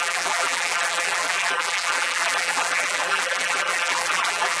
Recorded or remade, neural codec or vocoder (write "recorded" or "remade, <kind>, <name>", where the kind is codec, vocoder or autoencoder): remade, vocoder, BigVGAN v2